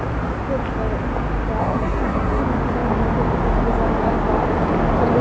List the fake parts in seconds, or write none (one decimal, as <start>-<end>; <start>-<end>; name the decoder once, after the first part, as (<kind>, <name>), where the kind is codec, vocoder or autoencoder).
1.6-2.4 (codec, SNAC)